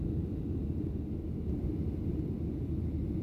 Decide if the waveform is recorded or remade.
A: recorded